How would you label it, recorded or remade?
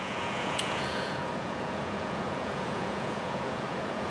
remade